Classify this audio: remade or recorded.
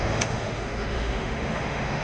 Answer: remade